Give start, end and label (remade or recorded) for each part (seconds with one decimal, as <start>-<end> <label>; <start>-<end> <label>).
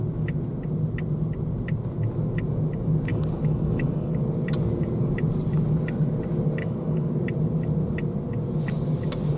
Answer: 0.0-3.1 recorded; 3.1-4.2 remade; 4.2-6.6 recorded; 6.6-7.1 remade; 7.1-9.4 recorded